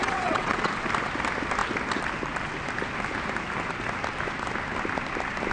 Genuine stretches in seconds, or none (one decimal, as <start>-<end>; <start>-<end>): 0.7-5.5